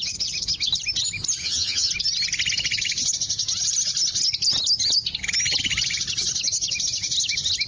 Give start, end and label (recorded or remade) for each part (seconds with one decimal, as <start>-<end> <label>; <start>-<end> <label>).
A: 0.0-1.4 recorded; 1.4-1.9 remade; 1.9-7.7 recorded